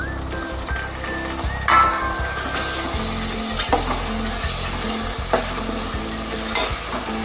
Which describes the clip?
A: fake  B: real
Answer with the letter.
B